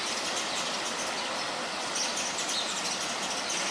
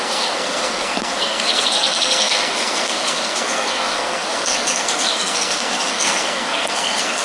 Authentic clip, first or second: first